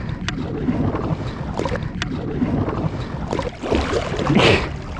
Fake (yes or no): no